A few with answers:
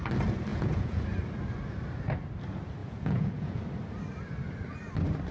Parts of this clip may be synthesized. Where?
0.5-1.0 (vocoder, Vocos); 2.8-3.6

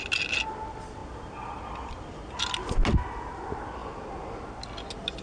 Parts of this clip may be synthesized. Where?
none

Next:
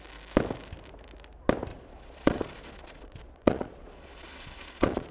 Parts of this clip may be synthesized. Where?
1.7-5.1 (vocoder, Vocos)